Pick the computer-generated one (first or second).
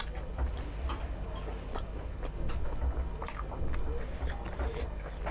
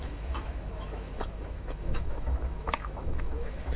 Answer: second